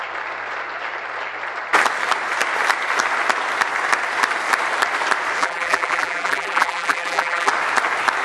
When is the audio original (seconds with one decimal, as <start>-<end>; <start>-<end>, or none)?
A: 0.0-5.4; 7.5-8.2